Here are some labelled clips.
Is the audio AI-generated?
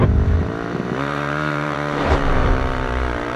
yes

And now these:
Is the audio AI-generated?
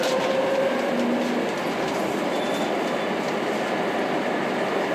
no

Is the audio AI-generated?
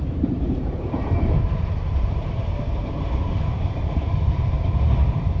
yes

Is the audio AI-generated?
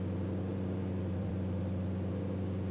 yes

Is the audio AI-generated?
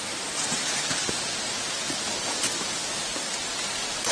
no